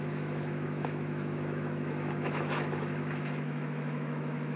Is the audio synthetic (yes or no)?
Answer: yes